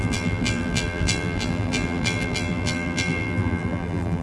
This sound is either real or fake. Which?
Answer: fake